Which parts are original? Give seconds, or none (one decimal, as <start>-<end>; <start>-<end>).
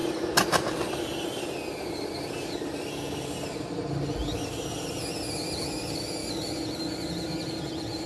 0.0-8.1